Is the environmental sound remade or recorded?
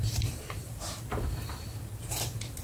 remade